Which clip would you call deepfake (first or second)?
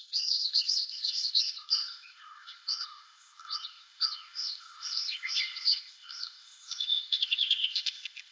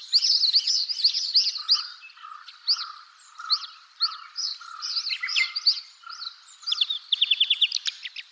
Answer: first